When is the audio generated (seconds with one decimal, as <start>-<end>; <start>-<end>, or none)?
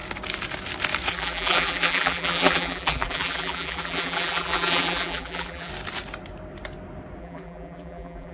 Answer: 1.1-5.7; 7.2-8.3